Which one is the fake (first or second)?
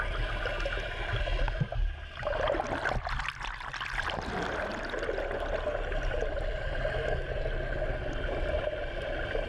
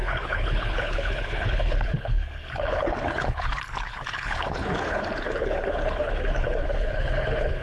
second